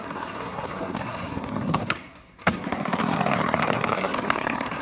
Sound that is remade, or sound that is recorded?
remade